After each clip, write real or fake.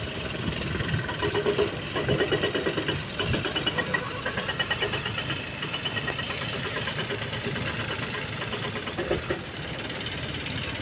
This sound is fake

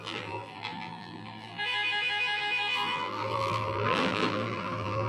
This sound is fake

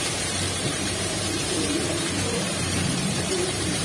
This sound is fake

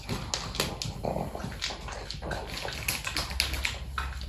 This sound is real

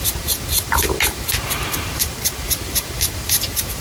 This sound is fake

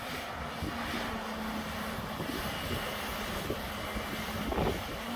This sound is real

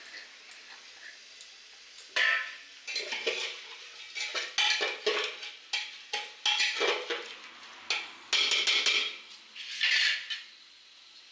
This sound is real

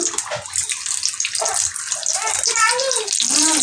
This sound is real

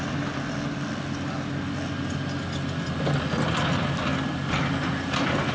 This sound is real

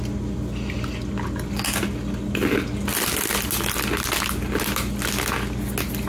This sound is real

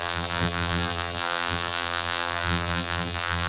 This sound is fake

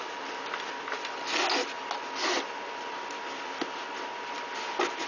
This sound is real